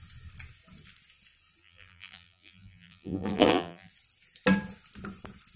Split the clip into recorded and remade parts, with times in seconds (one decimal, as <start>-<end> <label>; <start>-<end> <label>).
0.0-1.6 recorded; 1.6-3.9 remade; 3.9-5.6 recorded